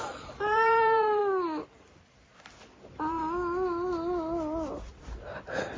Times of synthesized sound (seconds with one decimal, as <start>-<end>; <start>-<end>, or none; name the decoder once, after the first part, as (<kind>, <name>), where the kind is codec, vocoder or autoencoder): 0.0-1.2 (vocoder, BigVGAN v2); 2.6-3.2; 4.9-5.8